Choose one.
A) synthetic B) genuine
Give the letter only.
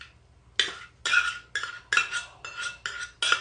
B